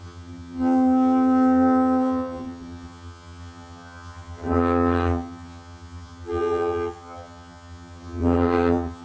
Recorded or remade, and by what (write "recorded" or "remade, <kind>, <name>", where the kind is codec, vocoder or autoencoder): remade, vocoder, HiFi-GAN